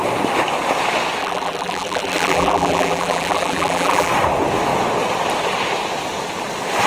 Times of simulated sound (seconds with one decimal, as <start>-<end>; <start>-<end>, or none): 1.2-4.1